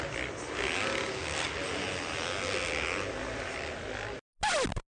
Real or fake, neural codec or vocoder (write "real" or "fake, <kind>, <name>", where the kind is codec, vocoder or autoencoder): real